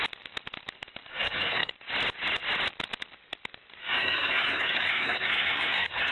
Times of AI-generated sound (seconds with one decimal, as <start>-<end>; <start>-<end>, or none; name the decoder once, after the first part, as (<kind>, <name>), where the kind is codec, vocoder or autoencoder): 1.1-1.7 (codec, SNAC); 3.8-6.1